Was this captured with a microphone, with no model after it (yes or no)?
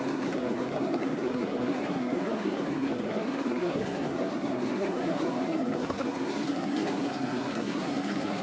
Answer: no